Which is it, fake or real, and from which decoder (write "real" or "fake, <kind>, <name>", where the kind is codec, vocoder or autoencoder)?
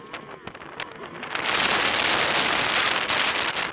real